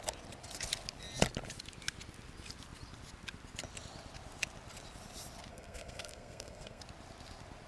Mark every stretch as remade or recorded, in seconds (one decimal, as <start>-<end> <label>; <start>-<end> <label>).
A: 0.0-5.5 recorded; 5.5-6.8 remade; 6.8-7.7 recorded